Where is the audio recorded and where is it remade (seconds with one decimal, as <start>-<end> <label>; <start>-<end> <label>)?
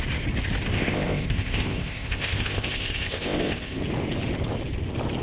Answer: 0.0-0.7 recorded; 0.7-3.8 remade; 3.8-5.2 recorded